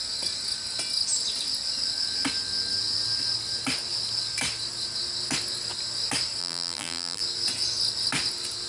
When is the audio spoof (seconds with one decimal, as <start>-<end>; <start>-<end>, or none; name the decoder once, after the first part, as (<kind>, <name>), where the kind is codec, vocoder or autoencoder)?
6.4-7.2 (vocoder, BigVGAN v2)